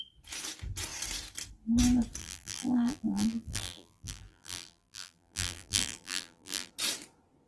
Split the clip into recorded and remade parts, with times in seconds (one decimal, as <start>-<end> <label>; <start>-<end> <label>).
0.0-2.2 recorded; 2.2-6.7 remade; 6.7-7.5 recorded